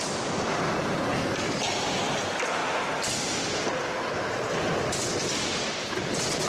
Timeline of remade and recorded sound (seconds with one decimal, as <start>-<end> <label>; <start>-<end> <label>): 0.0-6.5 remade

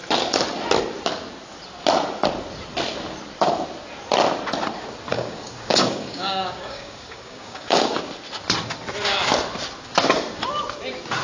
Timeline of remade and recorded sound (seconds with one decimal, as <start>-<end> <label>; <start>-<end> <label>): 0.0-5.1 recorded; 5.1-8.0 remade; 8.0-11.2 recorded

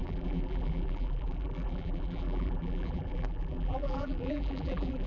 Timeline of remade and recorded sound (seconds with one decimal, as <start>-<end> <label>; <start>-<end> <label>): 0.0-5.1 remade

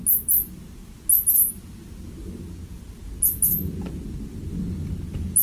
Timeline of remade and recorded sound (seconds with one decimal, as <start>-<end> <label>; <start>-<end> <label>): 0.0-5.4 recorded

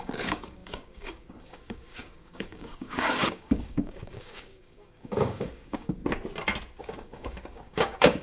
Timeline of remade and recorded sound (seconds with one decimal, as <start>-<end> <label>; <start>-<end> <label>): 0.0-6.0 remade; 6.0-6.8 recorded; 6.8-8.2 remade